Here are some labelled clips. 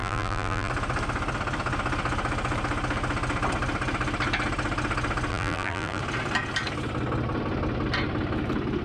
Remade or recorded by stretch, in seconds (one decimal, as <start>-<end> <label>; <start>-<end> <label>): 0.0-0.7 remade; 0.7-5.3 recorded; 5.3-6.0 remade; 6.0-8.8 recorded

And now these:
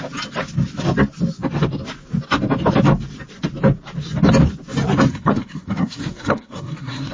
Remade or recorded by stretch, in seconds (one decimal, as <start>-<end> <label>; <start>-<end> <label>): 0.0-5.1 recorded; 5.1-7.1 remade

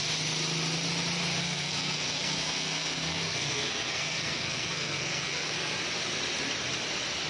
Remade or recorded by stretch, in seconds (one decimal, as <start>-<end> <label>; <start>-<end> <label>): 0.0-1.4 recorded; 1.4-5.8 remade; 5.8-7.3 recorded